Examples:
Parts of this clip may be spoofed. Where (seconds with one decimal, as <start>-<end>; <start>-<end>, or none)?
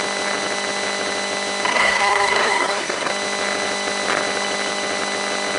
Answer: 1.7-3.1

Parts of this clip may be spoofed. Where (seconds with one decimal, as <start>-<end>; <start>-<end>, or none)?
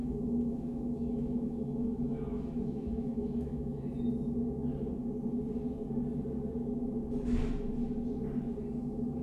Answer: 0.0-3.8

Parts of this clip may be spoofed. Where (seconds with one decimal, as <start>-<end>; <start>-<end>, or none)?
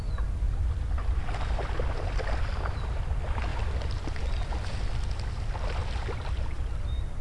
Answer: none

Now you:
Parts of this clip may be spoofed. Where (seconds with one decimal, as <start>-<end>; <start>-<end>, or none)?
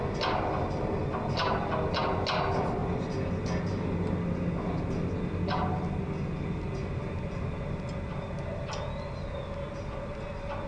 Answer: none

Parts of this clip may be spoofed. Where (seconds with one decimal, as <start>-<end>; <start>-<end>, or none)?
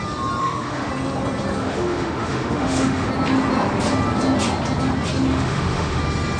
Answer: 0.4-0.9; 1.6-3.1; 5.3-6.0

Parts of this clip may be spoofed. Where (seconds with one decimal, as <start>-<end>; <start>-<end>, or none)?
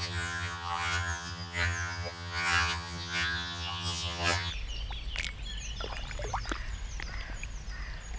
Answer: 0.0-4.5